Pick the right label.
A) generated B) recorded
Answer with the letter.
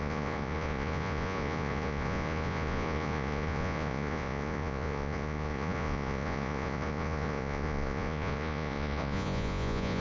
A